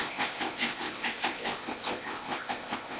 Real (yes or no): no